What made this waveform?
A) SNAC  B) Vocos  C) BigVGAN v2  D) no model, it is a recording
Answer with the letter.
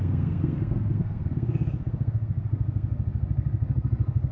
A